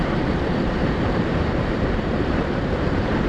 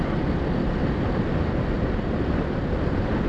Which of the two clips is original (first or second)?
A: second